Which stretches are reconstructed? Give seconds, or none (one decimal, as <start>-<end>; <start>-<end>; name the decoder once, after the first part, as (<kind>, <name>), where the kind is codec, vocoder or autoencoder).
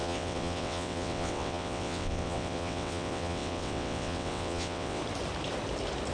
0.0-5.0 (vocoder, WaveNeXt)